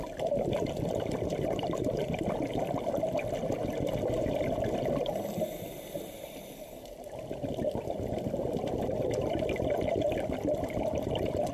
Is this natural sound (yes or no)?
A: yes